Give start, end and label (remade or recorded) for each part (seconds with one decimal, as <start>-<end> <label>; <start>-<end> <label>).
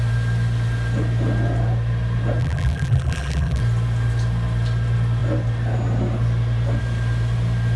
0.0-2.4 recorded; 2.4-3.6 remade; 3.6-7.8 recorded